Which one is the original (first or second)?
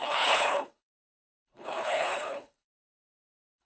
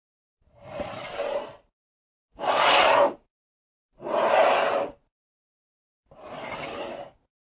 second